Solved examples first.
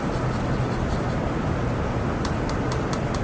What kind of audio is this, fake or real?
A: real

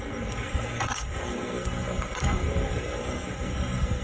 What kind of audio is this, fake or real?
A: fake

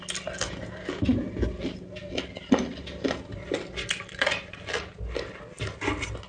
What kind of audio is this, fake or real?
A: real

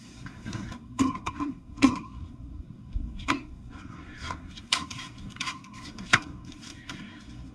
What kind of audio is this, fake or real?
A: fake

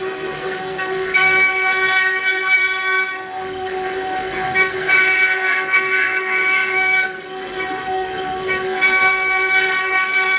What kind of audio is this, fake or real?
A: fake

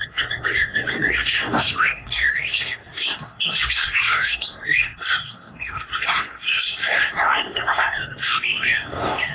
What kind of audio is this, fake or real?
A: fake